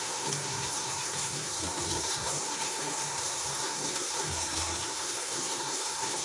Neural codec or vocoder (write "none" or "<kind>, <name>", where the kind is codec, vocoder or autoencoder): codec, SNAC